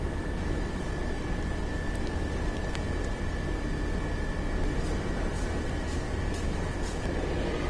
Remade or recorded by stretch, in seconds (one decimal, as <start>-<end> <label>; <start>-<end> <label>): 0.0-1.0 recorded; 1.0-1.7 remade; 1.7-7.7 recorded